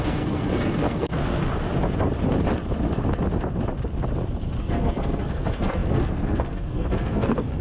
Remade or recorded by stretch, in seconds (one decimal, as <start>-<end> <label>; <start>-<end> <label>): 0.0-1.1 remade; 1.1-4.6 recorded; 4.6-7.6 remade